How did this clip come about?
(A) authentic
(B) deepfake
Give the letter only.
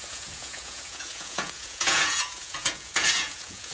B